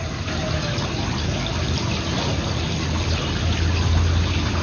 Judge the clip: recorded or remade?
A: recorded